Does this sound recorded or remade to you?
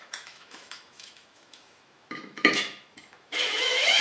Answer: remade